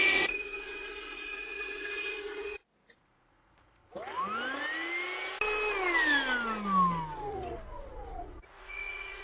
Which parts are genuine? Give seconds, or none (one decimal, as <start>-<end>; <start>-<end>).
3.8-7.3